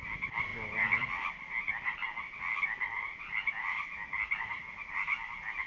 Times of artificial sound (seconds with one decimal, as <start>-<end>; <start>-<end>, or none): 0.0-2.0